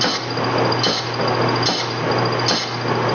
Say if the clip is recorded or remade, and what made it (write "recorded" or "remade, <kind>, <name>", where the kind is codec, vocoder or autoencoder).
recorded